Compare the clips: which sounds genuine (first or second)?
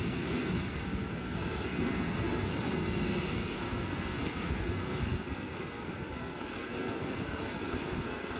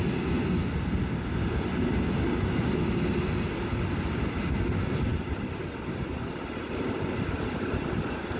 second